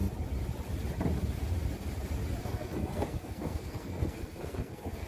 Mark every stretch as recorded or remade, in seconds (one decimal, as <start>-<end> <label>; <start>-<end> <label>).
0.0-2.4 recorded; 2.4-5.1 remade